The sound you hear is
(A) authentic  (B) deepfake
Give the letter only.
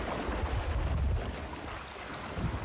A